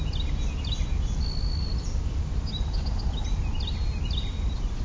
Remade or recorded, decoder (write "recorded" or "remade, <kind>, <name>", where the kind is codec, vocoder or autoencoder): recorded